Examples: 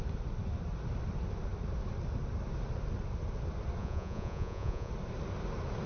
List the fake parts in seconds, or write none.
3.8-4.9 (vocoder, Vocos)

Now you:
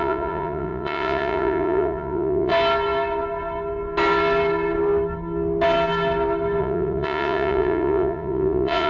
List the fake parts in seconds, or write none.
0.0-2.5 (vocoder, Vocos); 6.6-8.9

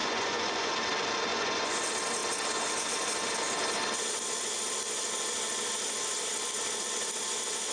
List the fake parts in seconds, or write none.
0.0-0.7 (vocoder, Vocos); 1.3-1.8

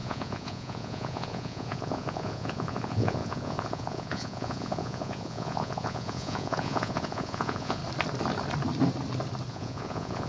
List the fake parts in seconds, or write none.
0.0-7.8 (vocoder, Vocos); 9.5-10.3

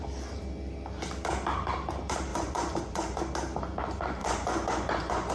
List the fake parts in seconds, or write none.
2.3-3.2 (vocoder, Vocos); 4.2-5.3

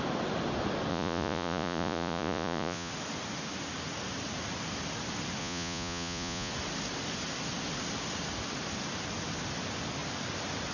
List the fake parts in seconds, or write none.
0.9-2.9 (vocoder, Vocos); 5.4-6.5

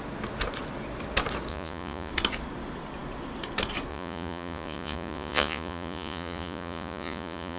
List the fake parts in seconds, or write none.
1.5-2.1 (vocoder, Vocos); 3.9-7.6